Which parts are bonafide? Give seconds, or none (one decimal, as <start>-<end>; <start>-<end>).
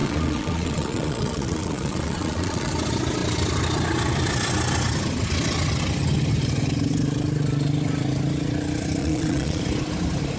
2.7-9.0; 9.6-10.4